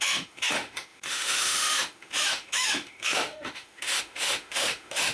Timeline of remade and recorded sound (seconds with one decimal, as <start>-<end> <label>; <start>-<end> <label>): 0.0-5.1 remade